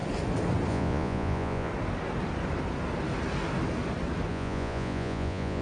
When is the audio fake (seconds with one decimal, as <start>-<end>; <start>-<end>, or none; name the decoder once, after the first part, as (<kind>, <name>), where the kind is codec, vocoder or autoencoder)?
0.7-1.7 (vocoder, Vocos); 4.3-5.6